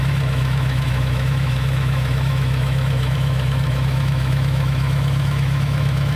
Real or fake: fake